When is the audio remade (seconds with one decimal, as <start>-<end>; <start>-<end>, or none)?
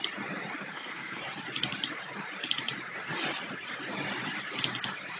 0.7-1.2